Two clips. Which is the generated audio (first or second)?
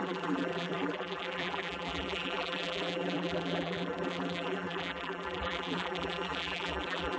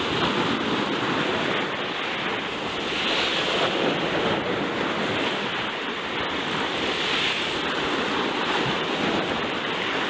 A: first